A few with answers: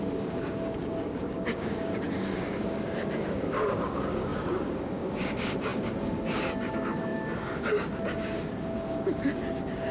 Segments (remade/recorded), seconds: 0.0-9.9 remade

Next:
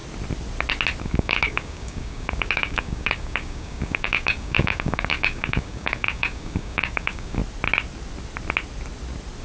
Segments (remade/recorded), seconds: 0.0-1.0 recorded; 1.0-7.4 remade; 7.4-9.4 recorded